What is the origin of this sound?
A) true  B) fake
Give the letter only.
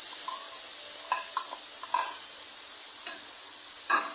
A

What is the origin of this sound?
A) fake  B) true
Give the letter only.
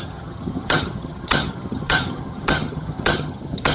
A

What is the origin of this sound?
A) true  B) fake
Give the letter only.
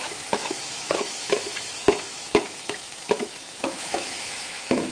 B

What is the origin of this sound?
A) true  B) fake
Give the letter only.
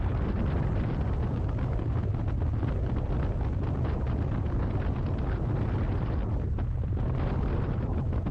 A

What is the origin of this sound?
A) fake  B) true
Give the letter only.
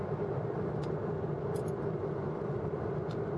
B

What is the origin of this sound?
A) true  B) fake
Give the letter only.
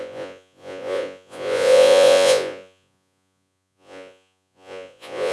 B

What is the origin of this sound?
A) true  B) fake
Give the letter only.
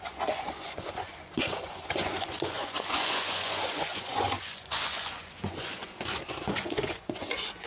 B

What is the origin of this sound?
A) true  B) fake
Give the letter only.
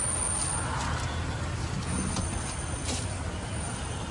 A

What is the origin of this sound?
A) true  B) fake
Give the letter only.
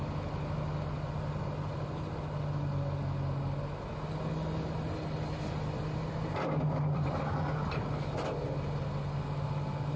A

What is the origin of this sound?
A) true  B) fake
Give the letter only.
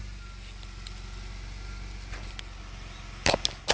A